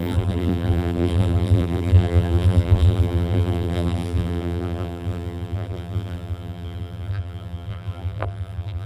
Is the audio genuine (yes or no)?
no